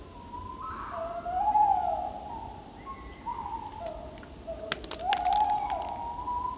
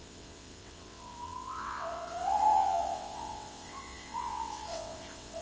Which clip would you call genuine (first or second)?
first